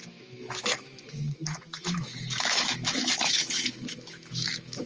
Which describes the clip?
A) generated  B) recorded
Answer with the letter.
A